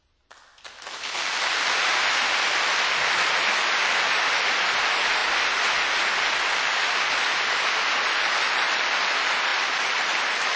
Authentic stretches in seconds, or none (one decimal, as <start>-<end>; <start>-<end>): 0.0-10.6

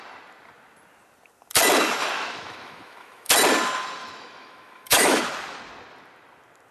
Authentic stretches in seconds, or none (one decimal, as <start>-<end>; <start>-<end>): 0.0-2.0; 3.3-4.0; 5.2-6.7